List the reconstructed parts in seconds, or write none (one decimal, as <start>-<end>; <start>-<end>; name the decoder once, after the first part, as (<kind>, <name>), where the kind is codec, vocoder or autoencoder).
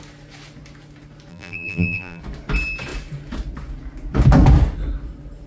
1.3-2.2 (vocoder, BigVGAN v2)